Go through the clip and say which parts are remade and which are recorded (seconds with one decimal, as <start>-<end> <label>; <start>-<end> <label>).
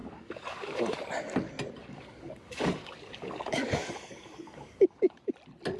0.0-1.0 remade; 1.0-1.8 recorded; 1.8-5.3 remade; 5.3-5.8 recorded